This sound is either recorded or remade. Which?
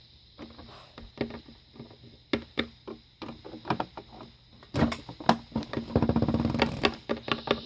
recorded